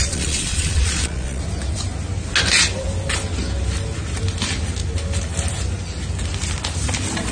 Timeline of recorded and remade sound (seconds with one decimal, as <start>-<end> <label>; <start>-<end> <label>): 0.0-1.4 remade; 1.4-7.3 recorded